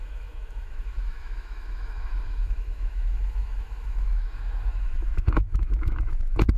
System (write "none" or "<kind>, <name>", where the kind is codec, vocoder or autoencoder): autoencoder, DAC-VAE